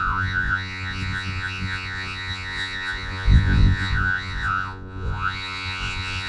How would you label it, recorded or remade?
remade